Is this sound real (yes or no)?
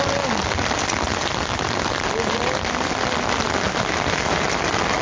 yes